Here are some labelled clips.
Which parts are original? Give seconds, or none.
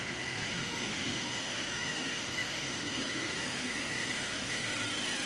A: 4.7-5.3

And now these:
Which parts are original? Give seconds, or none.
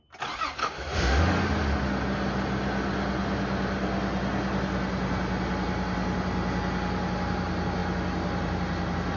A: 0.0-0.6; 1.2-9.2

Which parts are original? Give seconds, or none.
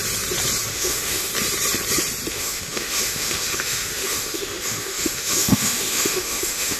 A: 0.0-0.7; 1.3-2.3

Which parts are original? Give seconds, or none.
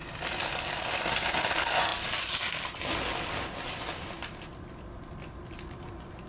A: 0.0-6.3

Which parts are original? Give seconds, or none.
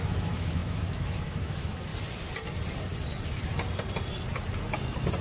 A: 1.9-5.2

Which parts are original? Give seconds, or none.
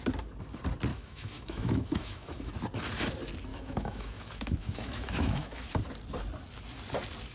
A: 0.0-0.9; 2.6-3.5; 5.7-7.3